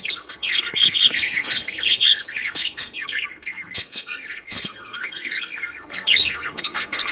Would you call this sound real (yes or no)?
no